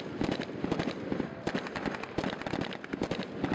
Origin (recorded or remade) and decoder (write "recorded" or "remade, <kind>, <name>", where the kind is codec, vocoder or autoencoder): recorded